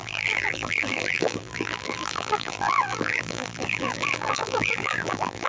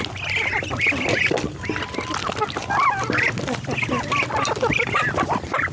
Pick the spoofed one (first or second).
first